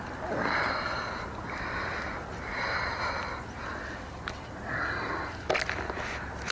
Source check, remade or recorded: recorded